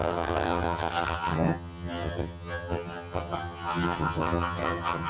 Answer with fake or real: fake